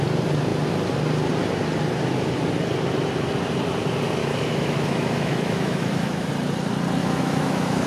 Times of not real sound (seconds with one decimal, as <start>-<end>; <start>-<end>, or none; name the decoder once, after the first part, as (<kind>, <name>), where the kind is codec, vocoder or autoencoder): 4.2-6.3 (autoencoder, DAC-VAE); 7.0-7.9

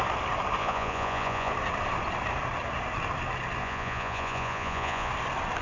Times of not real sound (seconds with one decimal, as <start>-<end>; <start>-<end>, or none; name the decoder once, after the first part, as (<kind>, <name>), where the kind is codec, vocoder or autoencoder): 0.6-1.5 (vocoder, Vocos); 3.6-5.1

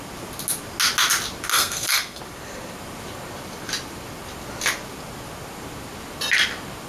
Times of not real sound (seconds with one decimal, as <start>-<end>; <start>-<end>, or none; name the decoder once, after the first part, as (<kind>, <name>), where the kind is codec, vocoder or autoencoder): 1.5-2.2 (codec, SNAC)

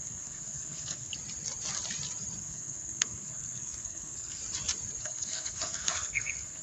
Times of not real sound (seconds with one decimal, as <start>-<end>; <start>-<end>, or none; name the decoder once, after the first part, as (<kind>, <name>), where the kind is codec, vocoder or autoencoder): 0.0-1.1 (codec, SNAC); 2.4-4.4; 5.0-6.6

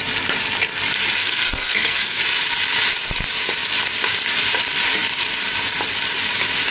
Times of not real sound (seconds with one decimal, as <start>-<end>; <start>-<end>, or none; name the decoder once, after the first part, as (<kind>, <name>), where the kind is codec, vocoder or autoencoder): 1.2-2.2 (codec, SNAC)